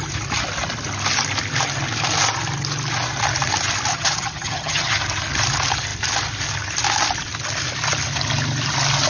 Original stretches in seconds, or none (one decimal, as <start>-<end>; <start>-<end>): 0.0-3.9; 5.0-9.1